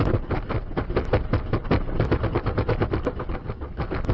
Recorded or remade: recorded